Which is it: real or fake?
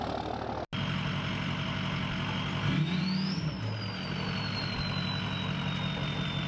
real